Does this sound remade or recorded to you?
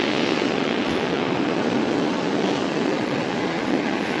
remade